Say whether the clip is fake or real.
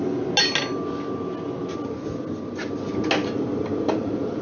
real